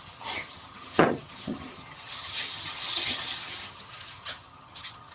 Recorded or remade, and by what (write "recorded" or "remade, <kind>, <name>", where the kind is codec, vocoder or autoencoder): remade, vocoder, HiFi-GAN